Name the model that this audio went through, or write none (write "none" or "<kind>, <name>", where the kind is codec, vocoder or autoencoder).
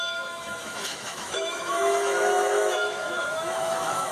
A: autoencoder, DAC-VAE